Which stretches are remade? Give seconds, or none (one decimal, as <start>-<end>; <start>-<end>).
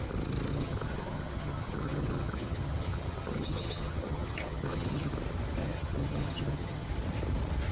0.5-5.1; 5.6-6.9